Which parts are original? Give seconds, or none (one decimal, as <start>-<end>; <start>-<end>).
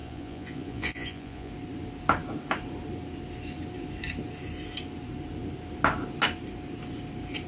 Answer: 1.5-7.5